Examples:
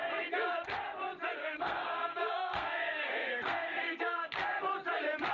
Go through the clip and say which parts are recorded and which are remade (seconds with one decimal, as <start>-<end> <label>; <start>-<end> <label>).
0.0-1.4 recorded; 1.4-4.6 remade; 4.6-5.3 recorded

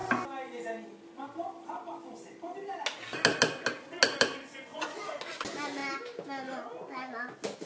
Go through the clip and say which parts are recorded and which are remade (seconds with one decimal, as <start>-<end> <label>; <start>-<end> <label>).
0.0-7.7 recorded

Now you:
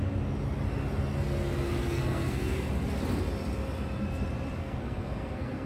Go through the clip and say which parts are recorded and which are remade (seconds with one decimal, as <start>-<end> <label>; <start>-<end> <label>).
0.0-1.8 recorded; 1.8-2.7 remade; 2.7-4.6 recorded; 4.6-5.7 remade

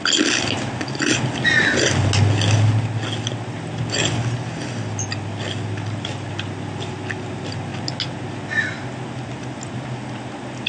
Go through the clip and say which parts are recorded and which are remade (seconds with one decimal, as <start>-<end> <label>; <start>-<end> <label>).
0.0-10.7 recorded